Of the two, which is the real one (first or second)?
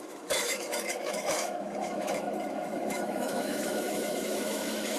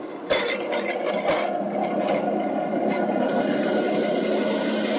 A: second